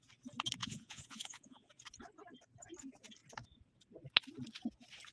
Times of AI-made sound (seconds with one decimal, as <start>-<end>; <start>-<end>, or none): 0.6-1.7